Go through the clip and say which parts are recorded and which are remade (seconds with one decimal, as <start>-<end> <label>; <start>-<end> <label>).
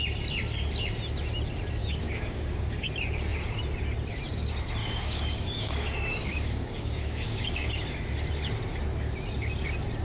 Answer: 0.0-1.8 recorded; 1.8-2.9 remade; 2.9-4.8 recorded; 4.8-7.7 remade; 7.7-10.0 recorded